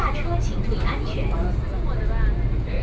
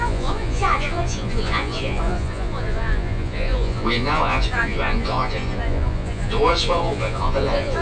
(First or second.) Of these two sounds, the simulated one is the second